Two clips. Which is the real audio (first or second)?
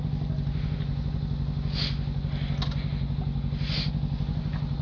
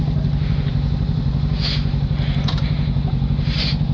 first